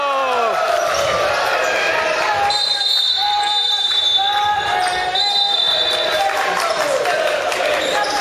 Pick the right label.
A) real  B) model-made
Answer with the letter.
A